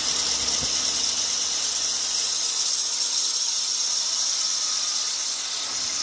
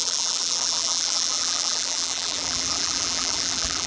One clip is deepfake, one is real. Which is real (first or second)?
first